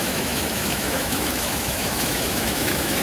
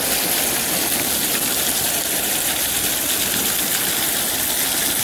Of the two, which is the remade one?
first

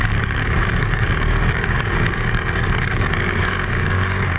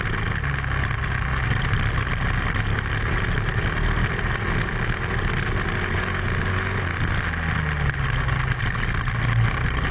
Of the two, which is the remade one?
first